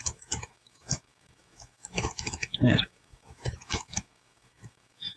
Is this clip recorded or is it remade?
remade